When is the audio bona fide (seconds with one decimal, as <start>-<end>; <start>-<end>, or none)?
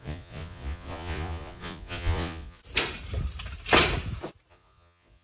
2.6-4.5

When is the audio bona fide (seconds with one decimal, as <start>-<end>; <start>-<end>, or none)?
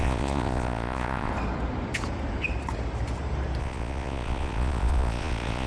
1.3-3.6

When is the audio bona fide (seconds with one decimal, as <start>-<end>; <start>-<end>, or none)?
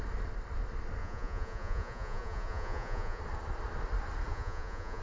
0.0-1.0; 3.2-4.3